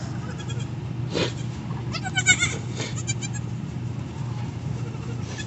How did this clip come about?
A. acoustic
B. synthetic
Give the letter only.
A